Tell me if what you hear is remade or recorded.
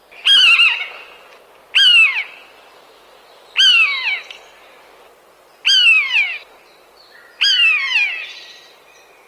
recorded